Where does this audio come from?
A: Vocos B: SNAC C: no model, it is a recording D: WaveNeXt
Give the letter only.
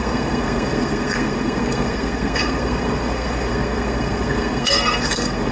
B